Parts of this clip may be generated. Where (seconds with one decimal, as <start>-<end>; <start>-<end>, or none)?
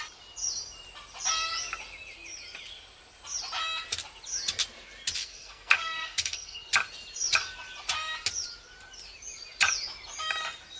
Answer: 5.2-6.7